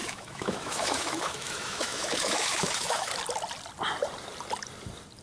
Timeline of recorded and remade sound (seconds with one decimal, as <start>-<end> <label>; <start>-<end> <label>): 0.0-3.1 remade; 3.1-5.2 recorded